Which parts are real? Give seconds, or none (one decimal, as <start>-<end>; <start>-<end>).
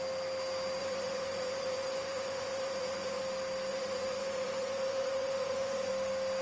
0.0-0.8; 3.2-3.7; 5.9-6.4